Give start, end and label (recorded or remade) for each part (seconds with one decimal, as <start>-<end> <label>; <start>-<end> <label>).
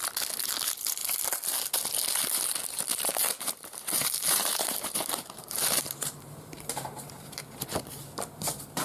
0.0-2.9 recorded; 2.9-7.4 remade; 7.4-8.8 recorded